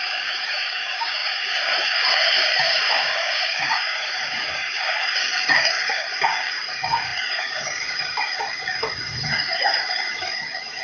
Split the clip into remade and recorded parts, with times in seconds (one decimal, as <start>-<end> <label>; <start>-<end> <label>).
0.0-10.8 remade